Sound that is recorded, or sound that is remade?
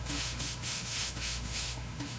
remade